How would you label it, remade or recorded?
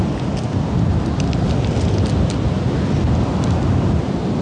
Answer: recorded